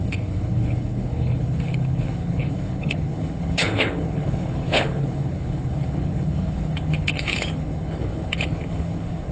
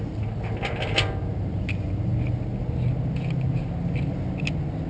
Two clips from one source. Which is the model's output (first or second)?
first